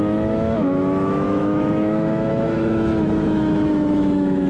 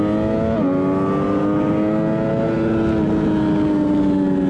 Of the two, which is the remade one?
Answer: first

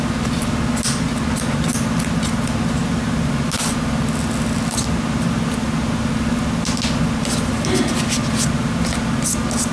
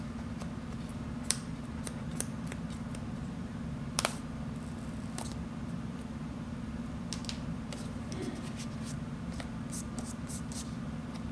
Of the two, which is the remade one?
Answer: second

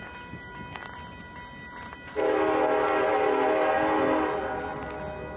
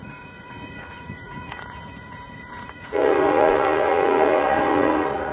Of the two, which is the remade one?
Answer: second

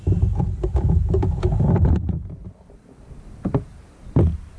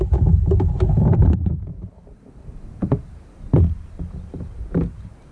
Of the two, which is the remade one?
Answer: second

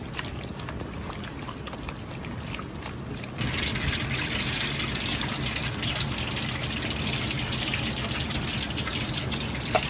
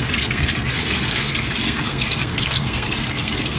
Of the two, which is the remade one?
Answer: second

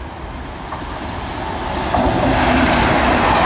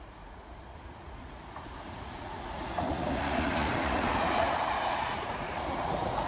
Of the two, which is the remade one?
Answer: second